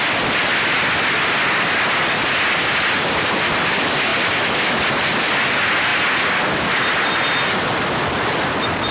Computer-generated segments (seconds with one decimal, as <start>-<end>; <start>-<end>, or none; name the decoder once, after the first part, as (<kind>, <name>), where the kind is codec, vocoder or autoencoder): none